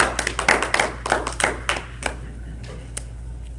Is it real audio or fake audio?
real